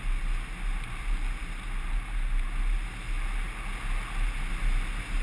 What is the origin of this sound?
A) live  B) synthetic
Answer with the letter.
A